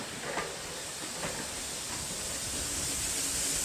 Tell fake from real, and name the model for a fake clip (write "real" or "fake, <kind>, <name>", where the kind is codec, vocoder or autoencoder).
real